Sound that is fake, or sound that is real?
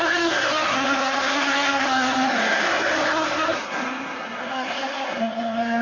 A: fake